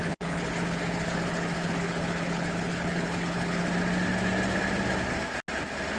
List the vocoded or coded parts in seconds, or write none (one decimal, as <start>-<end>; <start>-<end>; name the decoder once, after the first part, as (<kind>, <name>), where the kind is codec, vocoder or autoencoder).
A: 0.0-3.6 (codec, HILCodec)